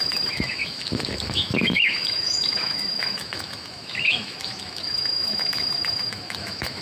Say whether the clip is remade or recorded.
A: remade